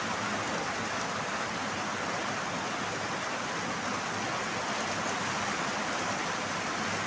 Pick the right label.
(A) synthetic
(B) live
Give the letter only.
B